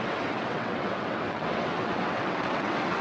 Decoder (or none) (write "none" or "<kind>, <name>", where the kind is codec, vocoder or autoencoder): vocoder, WaveNeXt